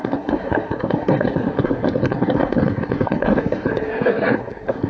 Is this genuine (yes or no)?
no